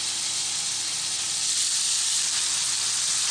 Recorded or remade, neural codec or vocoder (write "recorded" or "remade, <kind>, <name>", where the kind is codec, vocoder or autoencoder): recorded